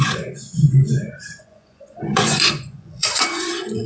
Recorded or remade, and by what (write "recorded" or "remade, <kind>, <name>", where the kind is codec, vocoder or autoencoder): remade, vocoder, Vocos